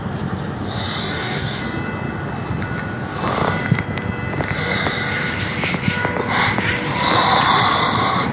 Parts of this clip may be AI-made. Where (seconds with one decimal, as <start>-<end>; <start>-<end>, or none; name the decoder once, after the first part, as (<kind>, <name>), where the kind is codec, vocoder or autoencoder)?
1.0-1.6 (codec, DAC)